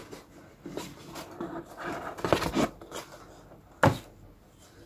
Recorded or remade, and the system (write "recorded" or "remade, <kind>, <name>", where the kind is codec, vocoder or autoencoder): recorded